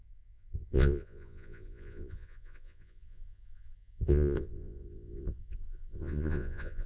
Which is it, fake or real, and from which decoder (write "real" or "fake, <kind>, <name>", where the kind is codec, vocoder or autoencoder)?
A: fake, vocoder, Vocos